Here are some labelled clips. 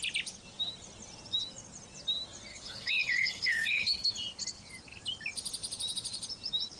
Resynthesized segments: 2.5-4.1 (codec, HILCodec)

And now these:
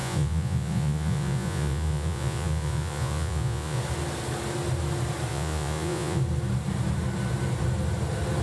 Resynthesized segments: 0.0-3.8 (vocoder, Vocos); 5.3-6.2

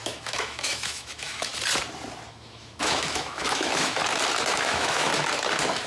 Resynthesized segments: 0.0-1.5 (autoencoder, DAC-VAE); 2.3-4.0; 4.5-5.1

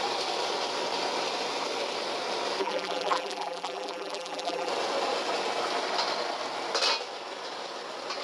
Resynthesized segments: 2.6-4.7 (vocoder, BigVGAN v2)

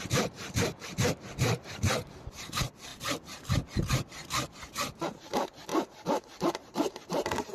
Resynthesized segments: 0.0-2.9 (vocoder, BigVGAN v2); 3.8-7.5